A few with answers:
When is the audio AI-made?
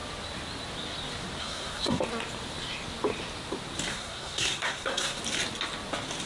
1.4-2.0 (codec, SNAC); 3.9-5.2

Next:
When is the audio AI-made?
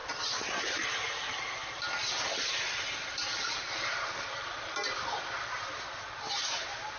none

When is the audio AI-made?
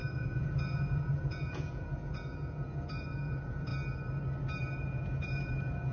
0.0-3.7 (vocoder, Vocos); 4.8-5.9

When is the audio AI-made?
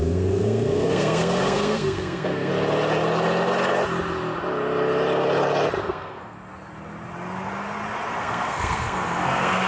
0.0-2.5 (codec, SNAC); 5.8-6.4; 8.2-9.7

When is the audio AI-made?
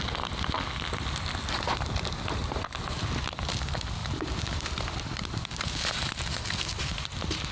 2.4-3.1 (vocoder, BigVGAN v2); 4.0-6.1; 6.7-7.5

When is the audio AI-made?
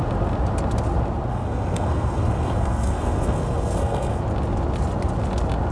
1.3-4.2 (codec, SNAC)